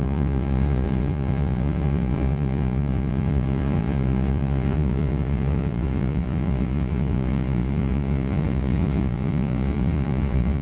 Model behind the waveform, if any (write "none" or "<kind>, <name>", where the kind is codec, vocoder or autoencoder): vocoder, Vocos